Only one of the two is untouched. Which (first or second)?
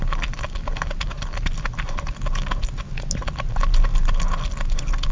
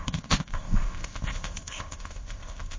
first